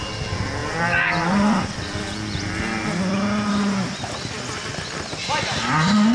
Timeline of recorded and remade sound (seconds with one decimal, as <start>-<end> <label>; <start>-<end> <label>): 0.0-6.1 recorded